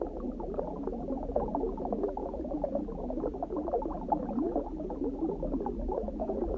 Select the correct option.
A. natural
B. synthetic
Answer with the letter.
A